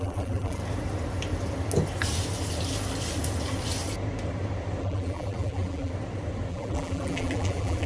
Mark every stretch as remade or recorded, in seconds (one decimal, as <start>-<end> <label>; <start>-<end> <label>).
0.0-0.6 remade; 0.6-4.8 recorded; 4.8-5.9 remade; 5.9-6.5 recorded; 6.5-7.9 remade